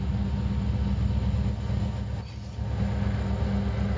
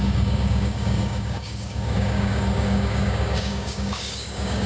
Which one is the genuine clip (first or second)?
first